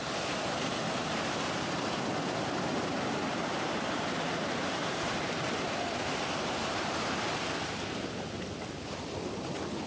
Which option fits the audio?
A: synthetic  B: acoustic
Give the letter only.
B